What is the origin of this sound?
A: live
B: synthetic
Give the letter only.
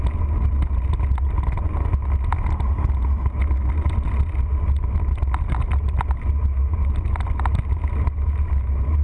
A